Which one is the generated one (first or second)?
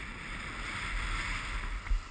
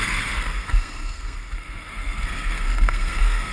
second